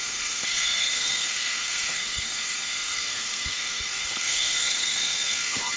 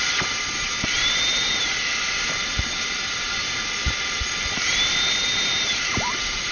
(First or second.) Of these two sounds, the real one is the second